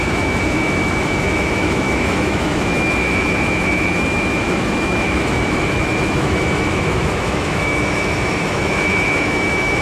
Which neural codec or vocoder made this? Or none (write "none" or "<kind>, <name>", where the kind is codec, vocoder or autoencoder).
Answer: autoencoder, DAC-VAE